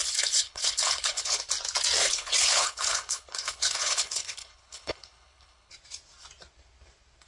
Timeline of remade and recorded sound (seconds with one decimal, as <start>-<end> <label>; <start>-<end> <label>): 0.0-1.4 remade; 1.4-2.0 recorded; 2.0-5.7 remade; 5.7-7.3 recorded